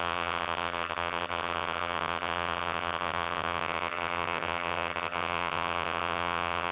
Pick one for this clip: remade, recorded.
remade